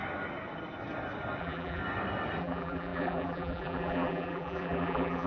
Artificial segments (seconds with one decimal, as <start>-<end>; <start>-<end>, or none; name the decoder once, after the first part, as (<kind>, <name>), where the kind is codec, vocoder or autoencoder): 1.4-1.8 (vocoder, BigVGAN v2); 2.4-5.3